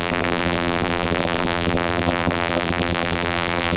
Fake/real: fake